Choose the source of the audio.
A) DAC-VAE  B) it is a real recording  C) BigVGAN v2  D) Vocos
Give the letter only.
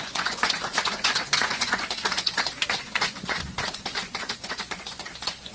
D